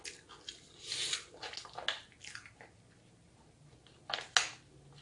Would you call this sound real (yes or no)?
yes